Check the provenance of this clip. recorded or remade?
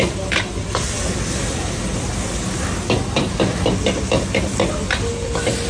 recorded